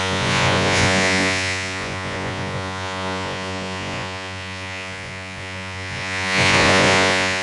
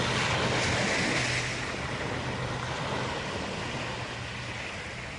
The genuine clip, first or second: second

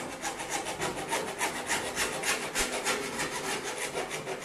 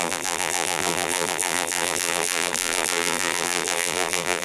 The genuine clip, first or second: first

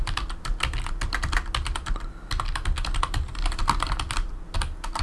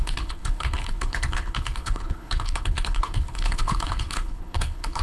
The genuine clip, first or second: first